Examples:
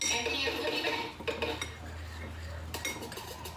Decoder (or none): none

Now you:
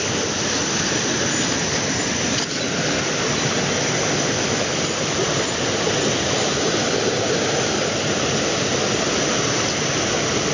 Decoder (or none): none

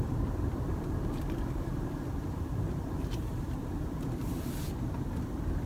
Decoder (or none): vocoder, BigVGAN v2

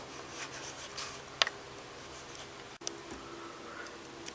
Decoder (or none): none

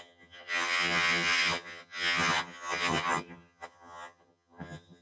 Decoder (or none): vocoder, HiFi-GAN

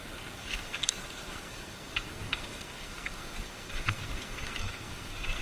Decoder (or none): codec, SNAC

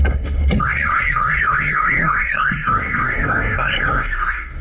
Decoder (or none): codec, SNAC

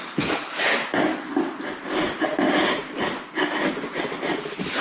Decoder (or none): none